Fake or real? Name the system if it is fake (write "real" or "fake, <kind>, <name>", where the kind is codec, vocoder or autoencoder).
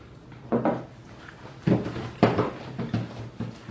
real